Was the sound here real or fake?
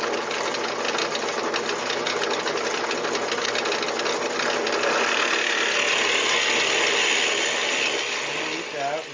real